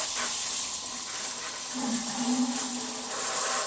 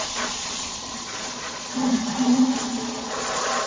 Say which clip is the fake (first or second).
second